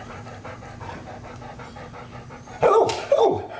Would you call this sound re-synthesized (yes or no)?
yes